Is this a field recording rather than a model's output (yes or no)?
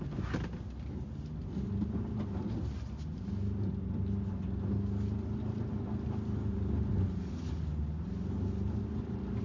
yes